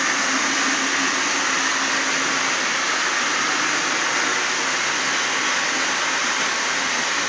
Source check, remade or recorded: recorded